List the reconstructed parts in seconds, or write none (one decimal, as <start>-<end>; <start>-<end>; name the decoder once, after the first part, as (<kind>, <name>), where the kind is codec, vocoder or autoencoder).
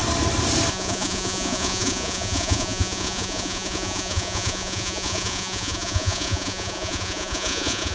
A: 0.7-7.9 (vocoder, Vocos)